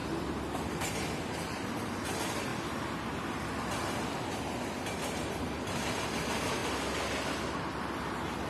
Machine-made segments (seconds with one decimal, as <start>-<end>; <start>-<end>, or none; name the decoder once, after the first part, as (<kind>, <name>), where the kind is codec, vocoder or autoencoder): 0.0-2.5 (vocoder, BigVGAN v2); 5.3-6.6; 8.1-8.5